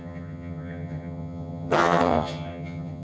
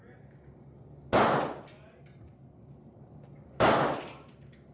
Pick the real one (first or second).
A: second